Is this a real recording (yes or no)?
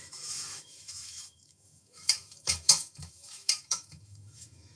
no